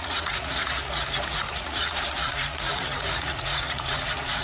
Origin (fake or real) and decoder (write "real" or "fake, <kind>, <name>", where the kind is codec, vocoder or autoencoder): fake, vocoder, Vocos